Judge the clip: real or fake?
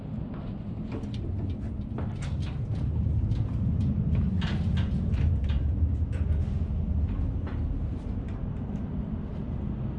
real